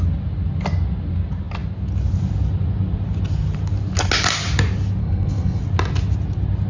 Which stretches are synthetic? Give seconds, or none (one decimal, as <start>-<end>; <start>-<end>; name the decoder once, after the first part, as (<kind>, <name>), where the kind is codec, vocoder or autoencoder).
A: 5.0-5.6 (codec, SNAC)